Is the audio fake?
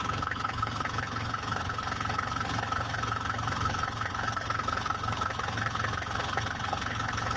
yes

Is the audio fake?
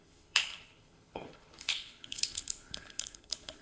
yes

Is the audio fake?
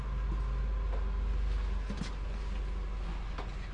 no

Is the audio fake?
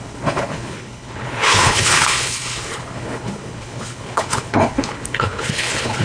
yes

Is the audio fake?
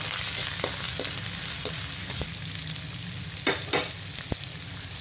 no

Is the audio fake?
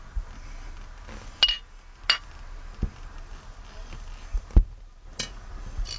no